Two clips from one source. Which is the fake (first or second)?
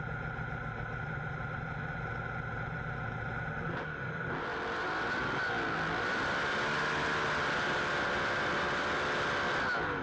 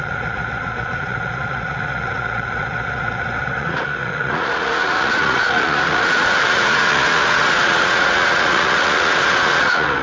second